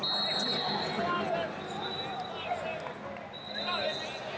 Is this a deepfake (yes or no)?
no